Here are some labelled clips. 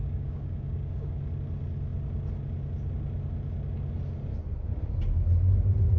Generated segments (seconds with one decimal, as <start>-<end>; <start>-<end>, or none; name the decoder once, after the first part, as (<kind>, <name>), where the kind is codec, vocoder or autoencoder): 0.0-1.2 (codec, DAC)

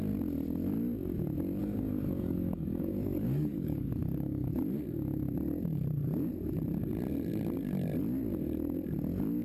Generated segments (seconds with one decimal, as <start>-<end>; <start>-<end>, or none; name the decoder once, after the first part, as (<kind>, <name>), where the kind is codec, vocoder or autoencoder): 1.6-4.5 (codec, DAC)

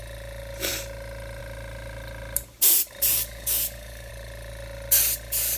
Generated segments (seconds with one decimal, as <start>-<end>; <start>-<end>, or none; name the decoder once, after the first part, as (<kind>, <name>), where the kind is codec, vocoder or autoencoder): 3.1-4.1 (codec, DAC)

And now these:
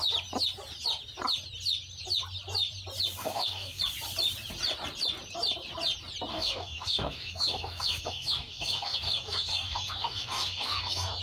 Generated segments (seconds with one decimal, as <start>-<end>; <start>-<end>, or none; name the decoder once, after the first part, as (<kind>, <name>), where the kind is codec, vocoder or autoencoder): 3.2-3.8 (codec, DAC); 6.3-11.2